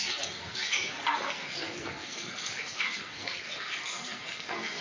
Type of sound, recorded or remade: remade